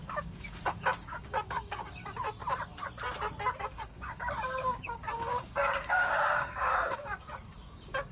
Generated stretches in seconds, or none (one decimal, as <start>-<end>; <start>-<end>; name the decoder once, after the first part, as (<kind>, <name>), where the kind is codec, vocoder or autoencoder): 0.0-2.4 (codec, DAC); 3.6-8.1